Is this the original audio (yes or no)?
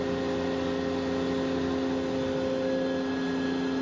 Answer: yes